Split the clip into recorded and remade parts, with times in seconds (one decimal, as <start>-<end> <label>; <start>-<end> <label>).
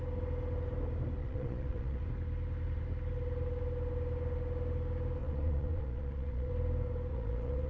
0.0-1.2 recorded; 1.2-2.0 remade; 2.0-5.2 recorded; 5.2-6.5 remade; 6.5-7.1 recorded; 7.1-7.7 remade